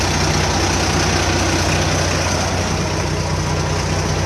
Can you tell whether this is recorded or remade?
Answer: recorded